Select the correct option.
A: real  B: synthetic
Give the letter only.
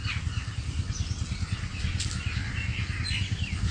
A